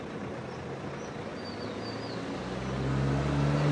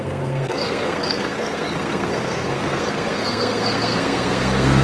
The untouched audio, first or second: first